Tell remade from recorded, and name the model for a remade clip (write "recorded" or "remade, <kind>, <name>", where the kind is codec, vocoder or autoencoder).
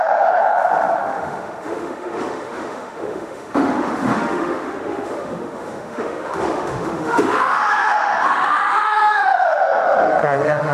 remade, autoencoder, DAC-VAE